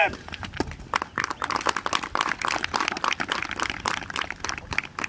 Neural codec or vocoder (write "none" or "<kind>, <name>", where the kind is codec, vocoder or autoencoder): none